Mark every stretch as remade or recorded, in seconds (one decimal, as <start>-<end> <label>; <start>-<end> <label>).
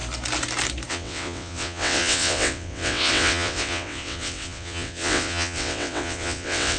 0.0-0.9 recorded; 0.9-6.8 remade